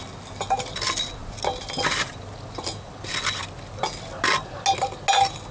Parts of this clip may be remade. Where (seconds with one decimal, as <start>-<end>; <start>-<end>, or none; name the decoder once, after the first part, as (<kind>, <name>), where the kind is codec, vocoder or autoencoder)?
1.2-2.9 (vocoder, BigVGAN v2)